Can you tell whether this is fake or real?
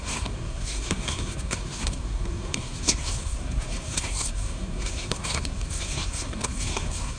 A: fake